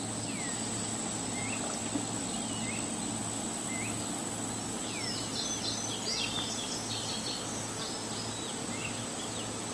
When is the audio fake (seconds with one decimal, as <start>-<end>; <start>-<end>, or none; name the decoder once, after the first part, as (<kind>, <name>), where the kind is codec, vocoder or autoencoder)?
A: 8.0-9.0 (vocoder, BigVGAN v2)